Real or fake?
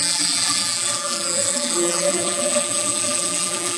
fake